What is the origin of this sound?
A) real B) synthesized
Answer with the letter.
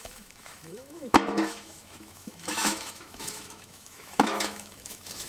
B